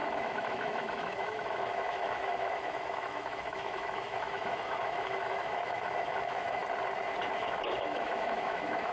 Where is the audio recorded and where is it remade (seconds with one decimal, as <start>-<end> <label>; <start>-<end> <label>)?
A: 0.0-6.6 remade; 6.6-7.3 recorded; 7.3-8.9 remade